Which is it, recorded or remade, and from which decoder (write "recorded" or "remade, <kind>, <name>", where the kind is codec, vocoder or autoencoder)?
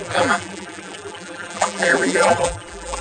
remade, vocoder, BigVGAN v2